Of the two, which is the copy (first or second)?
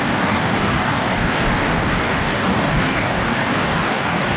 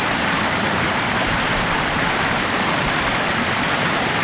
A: first